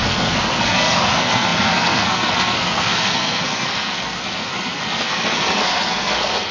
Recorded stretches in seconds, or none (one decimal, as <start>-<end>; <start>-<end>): none